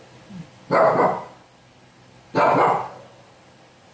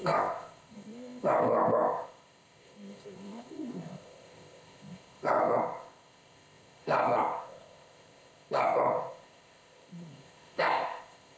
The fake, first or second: second